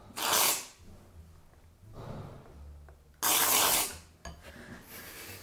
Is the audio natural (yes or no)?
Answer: yes